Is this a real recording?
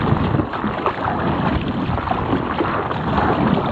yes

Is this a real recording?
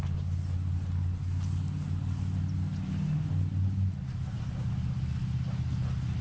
yes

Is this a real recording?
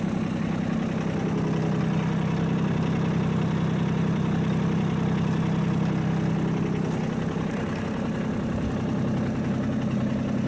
yes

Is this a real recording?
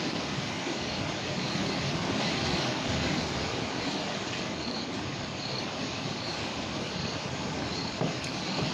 no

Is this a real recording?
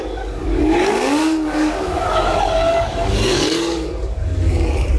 no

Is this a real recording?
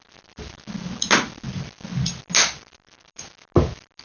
yes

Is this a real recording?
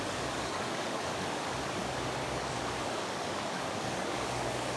no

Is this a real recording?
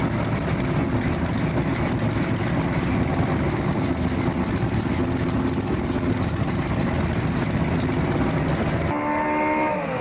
yes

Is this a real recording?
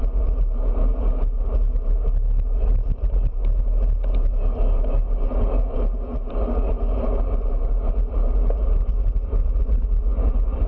yes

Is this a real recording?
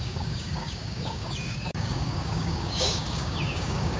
no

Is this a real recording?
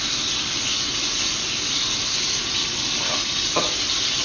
yes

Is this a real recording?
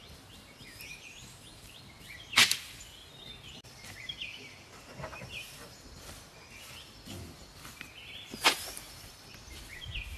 yes